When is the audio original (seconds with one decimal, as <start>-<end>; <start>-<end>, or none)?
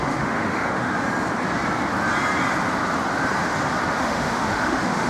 0.9-4.0